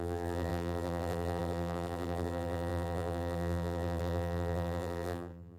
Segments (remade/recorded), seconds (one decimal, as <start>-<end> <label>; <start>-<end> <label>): 0.0-5.6 remade